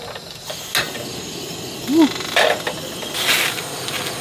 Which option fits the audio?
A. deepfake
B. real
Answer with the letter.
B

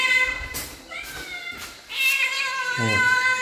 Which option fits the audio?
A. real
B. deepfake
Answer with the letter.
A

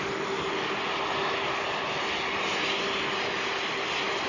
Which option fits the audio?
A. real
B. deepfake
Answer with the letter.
A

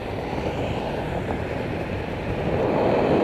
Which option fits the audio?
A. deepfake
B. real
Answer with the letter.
B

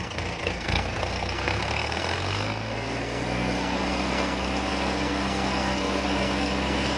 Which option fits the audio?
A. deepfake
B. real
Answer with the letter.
A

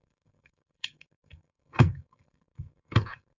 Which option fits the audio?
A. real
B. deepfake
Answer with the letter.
B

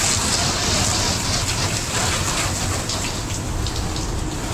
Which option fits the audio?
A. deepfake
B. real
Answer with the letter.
B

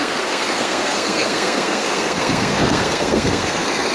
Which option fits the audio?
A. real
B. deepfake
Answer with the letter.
B